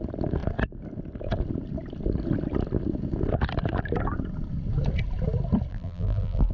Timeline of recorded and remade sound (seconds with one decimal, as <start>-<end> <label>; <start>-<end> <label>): 0.0-5.7 recorded; 5.7-6.5 remade